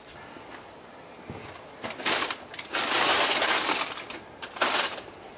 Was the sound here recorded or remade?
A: recorded